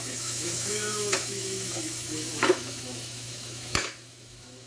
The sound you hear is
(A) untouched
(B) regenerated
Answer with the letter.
B